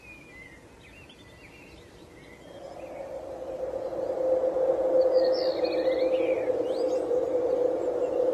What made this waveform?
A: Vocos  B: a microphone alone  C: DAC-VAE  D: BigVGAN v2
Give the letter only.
B